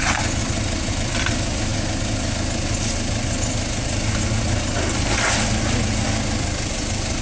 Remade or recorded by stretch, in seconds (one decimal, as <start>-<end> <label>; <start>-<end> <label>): 0.0-0.4 remade; 0.4-0.9 recorded; 0.9-1.7 remade; 1.7-5.9 recorded; 5.9-7.2 remade